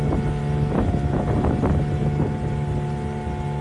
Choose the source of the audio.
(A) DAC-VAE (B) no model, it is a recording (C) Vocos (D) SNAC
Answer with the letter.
B